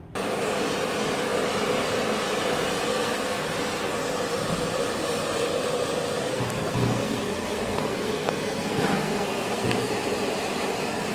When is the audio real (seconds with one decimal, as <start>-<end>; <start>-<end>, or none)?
0.0-2.9; 3.5-6.3; 9.9-11.1